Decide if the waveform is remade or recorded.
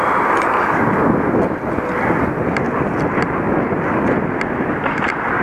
recorded